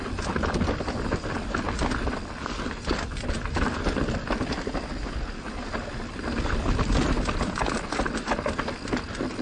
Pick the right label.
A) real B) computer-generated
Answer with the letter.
A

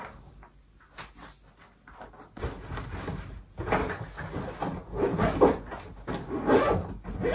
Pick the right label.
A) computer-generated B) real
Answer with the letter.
B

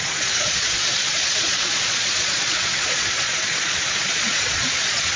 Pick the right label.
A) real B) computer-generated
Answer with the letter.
B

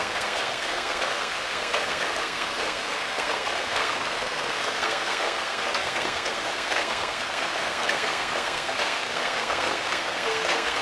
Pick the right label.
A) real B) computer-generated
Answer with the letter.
B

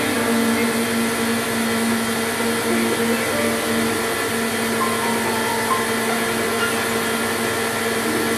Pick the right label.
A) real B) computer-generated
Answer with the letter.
A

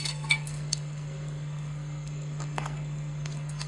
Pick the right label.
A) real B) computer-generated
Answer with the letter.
B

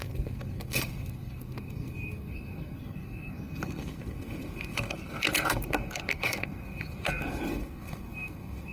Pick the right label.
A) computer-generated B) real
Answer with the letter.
A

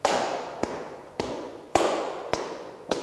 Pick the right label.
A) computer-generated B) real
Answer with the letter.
A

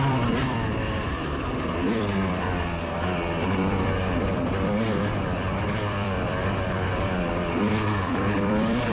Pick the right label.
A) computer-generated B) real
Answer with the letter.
A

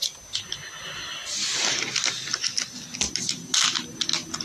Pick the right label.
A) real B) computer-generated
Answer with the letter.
A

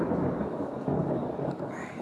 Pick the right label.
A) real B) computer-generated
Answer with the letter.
B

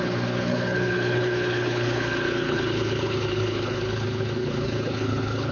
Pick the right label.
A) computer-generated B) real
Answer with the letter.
A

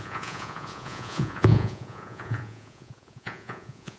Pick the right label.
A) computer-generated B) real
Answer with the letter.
A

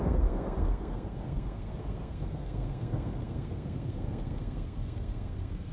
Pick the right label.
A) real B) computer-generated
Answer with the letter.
B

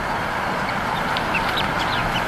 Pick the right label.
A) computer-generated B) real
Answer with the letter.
A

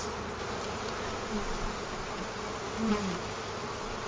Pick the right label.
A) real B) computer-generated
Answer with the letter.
A